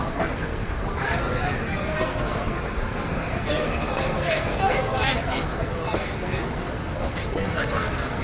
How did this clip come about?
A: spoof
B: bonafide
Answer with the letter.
A